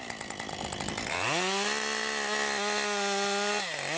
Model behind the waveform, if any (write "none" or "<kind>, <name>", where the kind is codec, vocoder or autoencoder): none